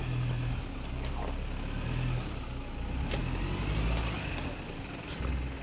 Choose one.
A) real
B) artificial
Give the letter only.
A